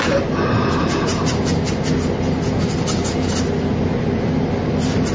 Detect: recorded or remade recorded